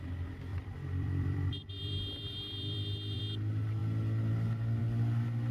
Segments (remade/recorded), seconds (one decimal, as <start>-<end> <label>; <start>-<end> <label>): 0.0-0.5 recorded; 0.5-3.2 remade; 3.2-5.5 recorded